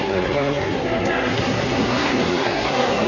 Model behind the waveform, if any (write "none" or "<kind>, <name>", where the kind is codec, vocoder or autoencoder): codec, SNAC